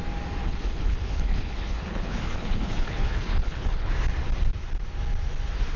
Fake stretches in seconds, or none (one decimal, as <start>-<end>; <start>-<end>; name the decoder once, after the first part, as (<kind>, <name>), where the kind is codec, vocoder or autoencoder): 0.4-3.9 (codec, HILCodec)